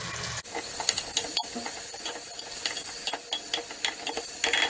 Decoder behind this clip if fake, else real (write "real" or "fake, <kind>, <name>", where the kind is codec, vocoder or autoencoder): real